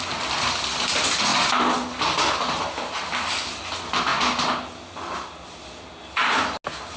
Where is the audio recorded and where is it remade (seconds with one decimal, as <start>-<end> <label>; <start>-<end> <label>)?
0.0-7.0 recorded